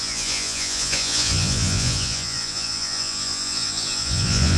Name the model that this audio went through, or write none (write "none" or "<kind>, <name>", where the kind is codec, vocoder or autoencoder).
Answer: vocoder, Vocos